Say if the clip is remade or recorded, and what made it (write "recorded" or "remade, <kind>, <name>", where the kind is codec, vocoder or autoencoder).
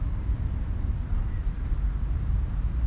recorded